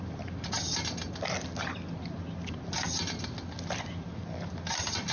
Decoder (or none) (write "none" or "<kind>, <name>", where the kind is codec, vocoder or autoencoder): none